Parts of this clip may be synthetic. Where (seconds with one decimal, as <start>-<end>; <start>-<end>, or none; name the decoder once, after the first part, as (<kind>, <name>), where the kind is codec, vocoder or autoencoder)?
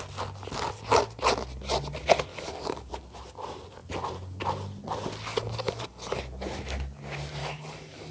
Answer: 2.3-2.9 (codec, DAC); 5.3-6.2; 7.4-8.1